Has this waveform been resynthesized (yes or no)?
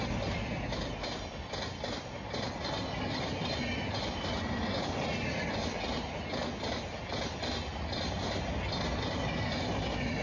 no